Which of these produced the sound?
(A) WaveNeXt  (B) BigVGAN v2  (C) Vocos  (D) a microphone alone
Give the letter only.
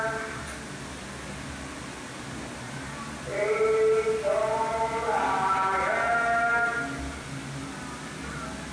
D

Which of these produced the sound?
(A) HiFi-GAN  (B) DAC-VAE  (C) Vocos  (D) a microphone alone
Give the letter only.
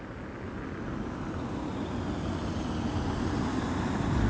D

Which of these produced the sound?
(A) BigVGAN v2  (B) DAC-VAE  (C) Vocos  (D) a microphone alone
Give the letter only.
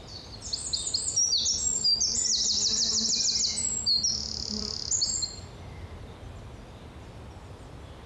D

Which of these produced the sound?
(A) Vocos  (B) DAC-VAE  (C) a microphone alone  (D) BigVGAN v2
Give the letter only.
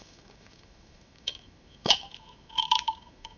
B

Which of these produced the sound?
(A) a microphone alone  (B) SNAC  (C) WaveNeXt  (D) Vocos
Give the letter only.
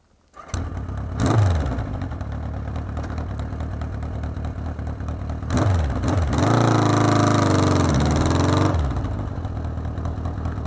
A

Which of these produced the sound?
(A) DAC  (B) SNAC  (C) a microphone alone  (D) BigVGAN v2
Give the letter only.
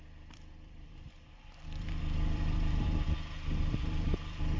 D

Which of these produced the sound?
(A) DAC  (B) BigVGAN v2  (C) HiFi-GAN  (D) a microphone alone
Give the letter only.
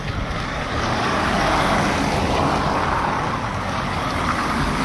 A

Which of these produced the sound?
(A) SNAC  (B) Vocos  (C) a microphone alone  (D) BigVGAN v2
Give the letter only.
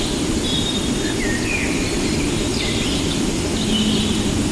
C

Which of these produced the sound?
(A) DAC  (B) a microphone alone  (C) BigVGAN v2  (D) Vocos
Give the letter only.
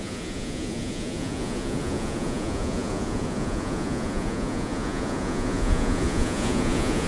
D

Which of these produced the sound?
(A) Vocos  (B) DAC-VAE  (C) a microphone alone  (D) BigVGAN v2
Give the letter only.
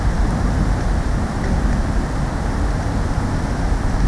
C